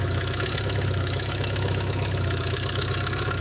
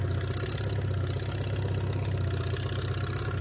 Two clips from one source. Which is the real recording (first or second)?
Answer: second